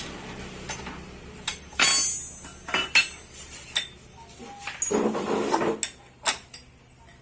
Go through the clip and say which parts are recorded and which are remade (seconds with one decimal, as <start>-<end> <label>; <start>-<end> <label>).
0.0-7.2 recorded

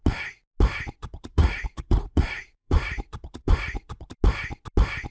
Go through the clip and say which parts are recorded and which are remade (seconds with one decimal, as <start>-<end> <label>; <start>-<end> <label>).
0.0-1.0 recorded; 1.0-4.1 remade; 4.1-5.1 recorded